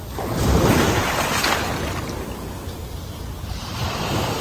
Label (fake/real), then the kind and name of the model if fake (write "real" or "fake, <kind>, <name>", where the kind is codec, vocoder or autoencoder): real